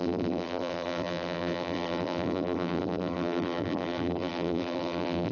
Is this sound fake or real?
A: fake